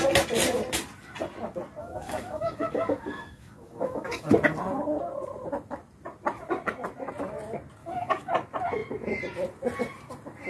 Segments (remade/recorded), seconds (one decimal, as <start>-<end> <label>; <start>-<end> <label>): 0.0-1.8 recorded; 1.8-4.3 remade; 4.3-7.8 recorded; 7.8-8.3 remade; 8.3-10.5 recorded